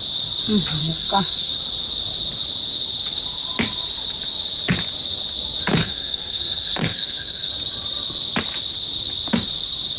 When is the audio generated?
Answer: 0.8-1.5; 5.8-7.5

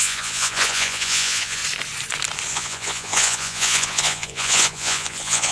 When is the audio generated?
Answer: 0.0-1.6; 2.5-5.5

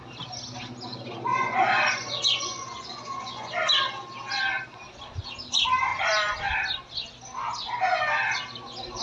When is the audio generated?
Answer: 1.3-3.5

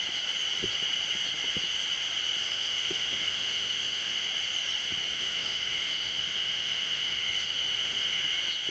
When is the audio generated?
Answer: 2.4-4.3; 5.1-8.2

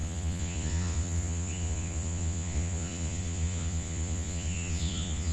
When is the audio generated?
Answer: 0.0-5.3

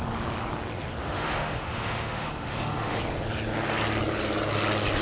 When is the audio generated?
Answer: 1.0-3.0